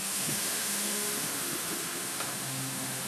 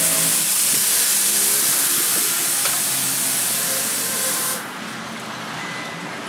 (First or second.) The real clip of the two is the second